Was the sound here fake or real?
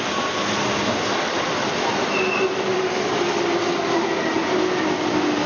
real